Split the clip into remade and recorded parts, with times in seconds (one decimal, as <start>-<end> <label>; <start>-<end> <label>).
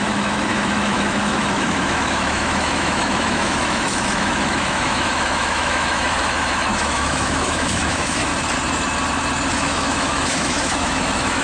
0.0-8.3 remade; 8.3-9.6 recorded; 9.6-11.4 remade